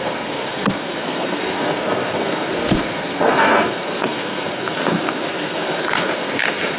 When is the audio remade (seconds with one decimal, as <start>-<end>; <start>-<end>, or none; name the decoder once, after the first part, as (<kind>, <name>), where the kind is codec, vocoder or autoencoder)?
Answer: 0.0-6.8 (codec, SNAC)